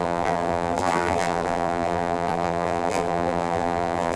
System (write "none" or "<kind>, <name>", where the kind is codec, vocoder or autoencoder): vocoder, BigVGAN v2